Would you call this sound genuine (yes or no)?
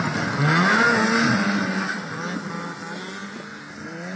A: yes